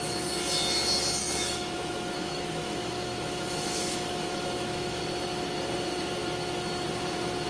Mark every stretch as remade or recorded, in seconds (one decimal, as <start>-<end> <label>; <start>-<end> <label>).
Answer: 0.0-1.2 recorded; 1.2-5.0 remade; 5.0-7.5 recorded